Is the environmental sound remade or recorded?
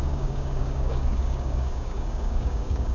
remade